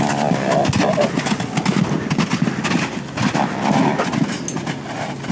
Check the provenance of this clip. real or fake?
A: real